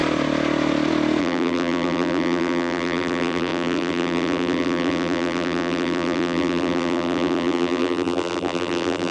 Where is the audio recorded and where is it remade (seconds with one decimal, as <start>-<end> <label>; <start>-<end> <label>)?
0.0-1.2 recorded; 1.2-9.1 remade